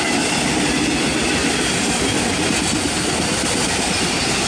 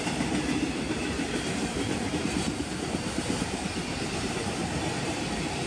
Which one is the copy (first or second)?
second